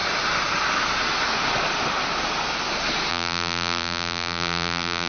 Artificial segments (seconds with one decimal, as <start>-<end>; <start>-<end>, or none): 3.1-5.1